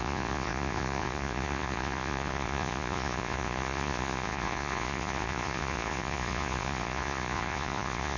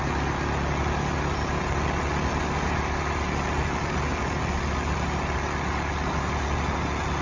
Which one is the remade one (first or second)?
first